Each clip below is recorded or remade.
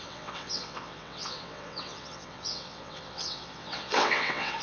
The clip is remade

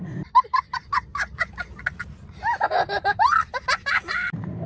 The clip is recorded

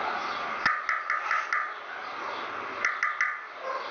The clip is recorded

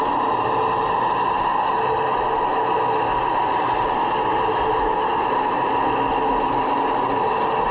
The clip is recorded